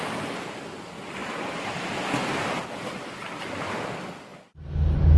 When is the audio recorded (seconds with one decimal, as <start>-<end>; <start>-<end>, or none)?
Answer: 0.0-5.2